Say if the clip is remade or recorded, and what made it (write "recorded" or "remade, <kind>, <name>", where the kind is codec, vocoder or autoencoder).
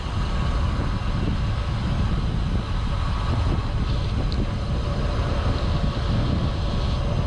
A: recorded